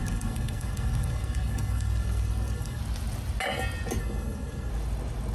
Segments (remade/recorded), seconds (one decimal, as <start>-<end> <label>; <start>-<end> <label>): 0.0-2.8 remade; 2.8-4.0 recorded; 4.0-4.7 remade; 4.7-5.3 recorded